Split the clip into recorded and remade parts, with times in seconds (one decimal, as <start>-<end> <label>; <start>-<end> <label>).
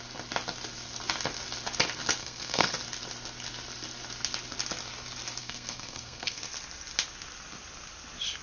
0.0-2.2 recorded; 2.2-2.7 remade; 2.7-5.4 recorded; 5.4-6.4 remade; 6.4-8.4 recorded